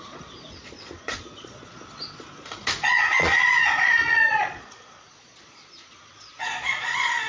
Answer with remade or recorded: remade